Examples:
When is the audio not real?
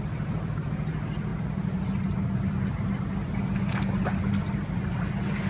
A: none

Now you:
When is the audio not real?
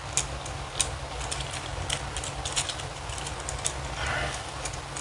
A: none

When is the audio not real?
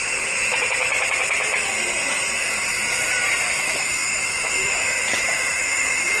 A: 3.6-6.2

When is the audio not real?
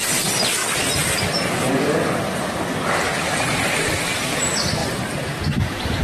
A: 4.8-6.0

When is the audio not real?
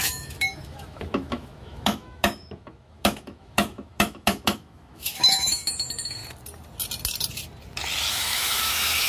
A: 0.0-6.2; 8.1-9.1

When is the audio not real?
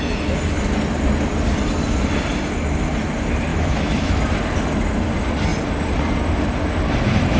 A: 3.5-4.2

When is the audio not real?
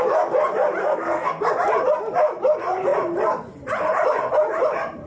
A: 0.8-1.4